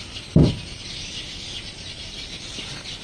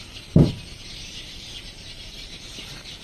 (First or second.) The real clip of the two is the first